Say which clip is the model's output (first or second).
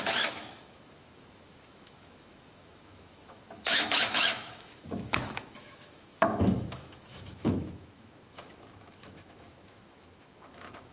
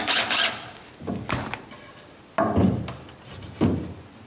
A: first